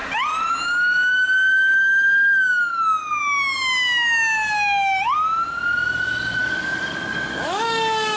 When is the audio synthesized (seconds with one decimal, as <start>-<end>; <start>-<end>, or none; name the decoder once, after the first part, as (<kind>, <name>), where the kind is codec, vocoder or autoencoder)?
6.4-8.2 (codec, DAC)